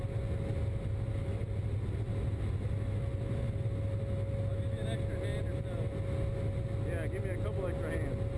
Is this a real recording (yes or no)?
yes